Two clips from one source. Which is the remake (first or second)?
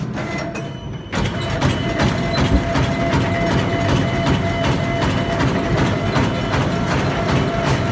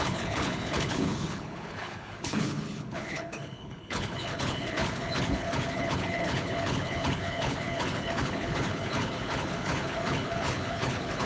second